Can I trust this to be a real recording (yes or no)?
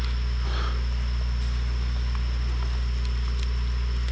yes